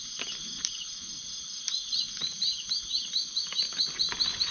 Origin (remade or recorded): recorded